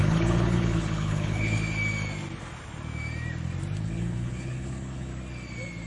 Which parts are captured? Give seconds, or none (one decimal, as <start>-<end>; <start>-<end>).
1.6-3.8; 5.1-5.9